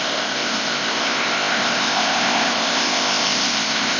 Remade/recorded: remade